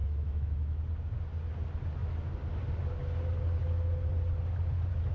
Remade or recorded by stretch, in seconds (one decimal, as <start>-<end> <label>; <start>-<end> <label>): 0.0-0.8 remade; 0.8-5.1 recorded